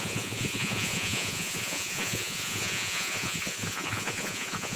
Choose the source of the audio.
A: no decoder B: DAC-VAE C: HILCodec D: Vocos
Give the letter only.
D